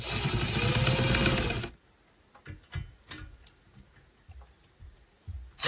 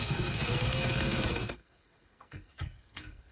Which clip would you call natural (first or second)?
first